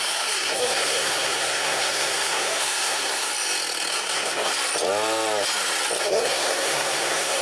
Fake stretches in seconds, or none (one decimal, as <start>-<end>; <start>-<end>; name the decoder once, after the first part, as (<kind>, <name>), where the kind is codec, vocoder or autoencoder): 0.0-3.3 (codec, SNAC); 3.9-4.5; 6.0-7.4